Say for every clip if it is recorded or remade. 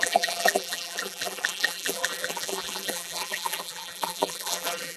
remade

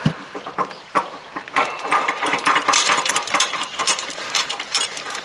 remade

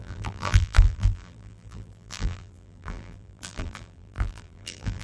remade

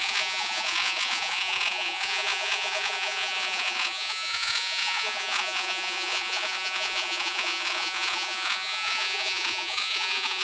remade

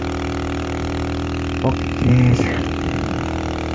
recorded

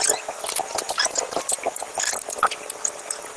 recorded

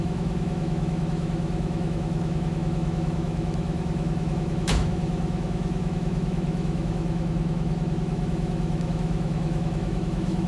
remade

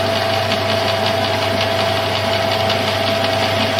recorded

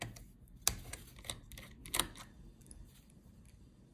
recorded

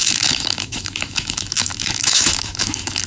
remade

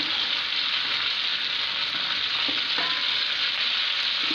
recorded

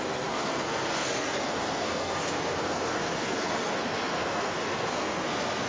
remade